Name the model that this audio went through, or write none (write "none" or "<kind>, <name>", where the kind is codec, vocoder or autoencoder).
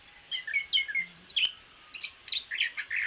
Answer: none